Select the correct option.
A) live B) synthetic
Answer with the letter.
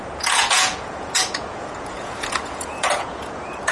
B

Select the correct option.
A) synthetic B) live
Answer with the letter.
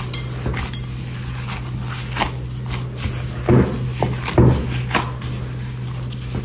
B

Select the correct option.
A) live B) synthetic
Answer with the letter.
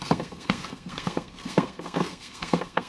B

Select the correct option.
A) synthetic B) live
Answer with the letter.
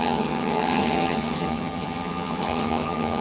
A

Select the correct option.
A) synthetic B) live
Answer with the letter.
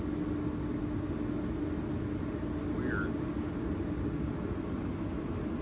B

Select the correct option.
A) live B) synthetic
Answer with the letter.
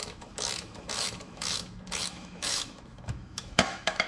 B